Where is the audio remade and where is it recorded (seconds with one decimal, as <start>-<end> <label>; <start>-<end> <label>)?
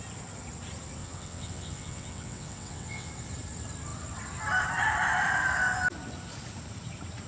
0.0-1.0 recorded; 1.0-3.1 remade; 3.1-7.3 recorded